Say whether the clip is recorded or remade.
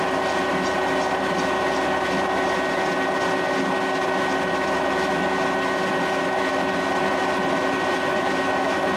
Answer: recorded